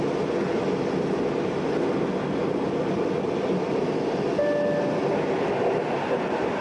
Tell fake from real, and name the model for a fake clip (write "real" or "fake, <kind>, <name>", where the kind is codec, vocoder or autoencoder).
real